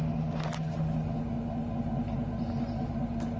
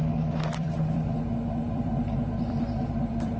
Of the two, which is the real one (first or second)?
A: first